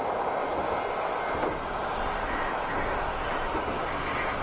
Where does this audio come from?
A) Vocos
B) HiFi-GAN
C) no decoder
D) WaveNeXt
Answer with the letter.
C